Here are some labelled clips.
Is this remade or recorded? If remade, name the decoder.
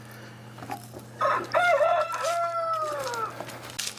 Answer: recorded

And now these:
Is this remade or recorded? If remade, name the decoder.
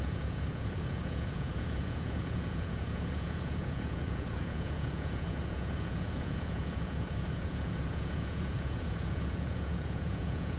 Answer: remade, vocoder, Vocos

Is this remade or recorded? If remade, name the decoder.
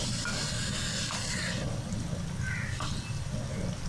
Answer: recorded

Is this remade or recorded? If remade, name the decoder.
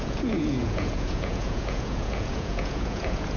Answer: remade, vocoder, Vocos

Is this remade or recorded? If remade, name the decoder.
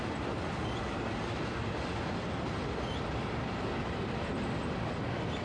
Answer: recorded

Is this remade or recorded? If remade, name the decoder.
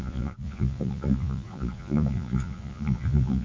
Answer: remade, vocoder, Vocos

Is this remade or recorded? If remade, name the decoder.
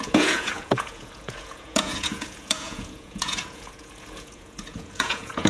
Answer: remade, vocoder, Vocos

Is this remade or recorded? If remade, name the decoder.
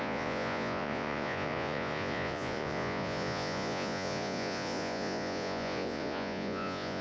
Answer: remade, vocoder, Vocos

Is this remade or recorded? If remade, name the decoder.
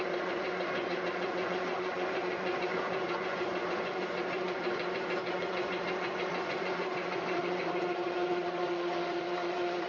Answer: remade, vocoder, Vocos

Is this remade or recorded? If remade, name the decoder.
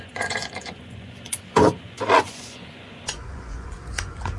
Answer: remade, vocoder, Vocos